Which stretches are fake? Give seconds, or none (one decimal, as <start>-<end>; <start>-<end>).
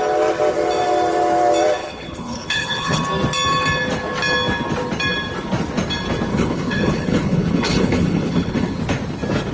1.8-3.0; 6.3-8.8